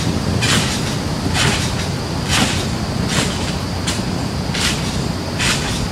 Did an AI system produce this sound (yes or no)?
no